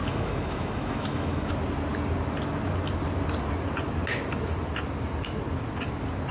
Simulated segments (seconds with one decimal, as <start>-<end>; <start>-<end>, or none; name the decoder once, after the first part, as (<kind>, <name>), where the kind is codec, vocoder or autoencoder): 0.0-1.5 (autoencoder, DAC-VAE)